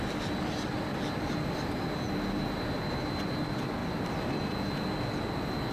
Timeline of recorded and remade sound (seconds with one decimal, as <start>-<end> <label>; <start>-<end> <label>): 0.0-5.7 recorded